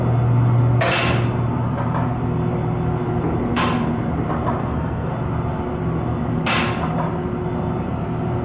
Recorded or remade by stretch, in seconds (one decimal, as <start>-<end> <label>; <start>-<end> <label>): 0.0-4.6 recorded; 4.6-5.1 remade; 5.1-8.4 recorded